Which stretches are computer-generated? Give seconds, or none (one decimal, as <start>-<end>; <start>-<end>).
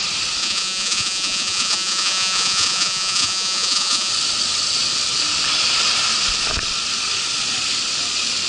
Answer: 0.4-4.1